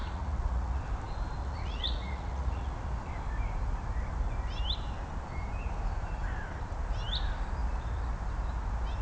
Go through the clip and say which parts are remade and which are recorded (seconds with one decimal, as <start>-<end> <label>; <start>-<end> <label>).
0.0-0.8 remade; 0.8-1.4 recorded; 1.4-2.7 remade; 2.7-9.0 recorded